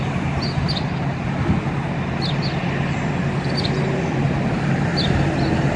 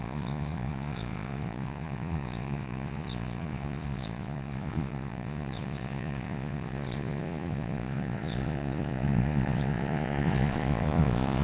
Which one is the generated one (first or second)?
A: second